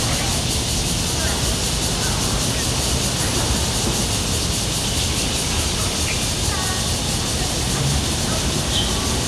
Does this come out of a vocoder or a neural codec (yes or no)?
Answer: no